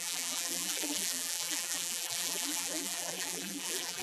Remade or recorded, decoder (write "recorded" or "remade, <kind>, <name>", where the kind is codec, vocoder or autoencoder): remade, vocoder, BigVGAN v2